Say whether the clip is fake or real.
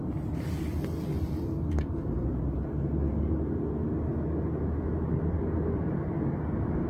real